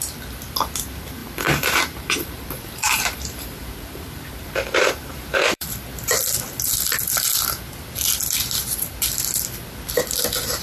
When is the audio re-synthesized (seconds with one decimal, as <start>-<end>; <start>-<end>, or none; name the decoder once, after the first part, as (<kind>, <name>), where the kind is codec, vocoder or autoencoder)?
1.2-5.7 (vocoder, BigVGAN v2)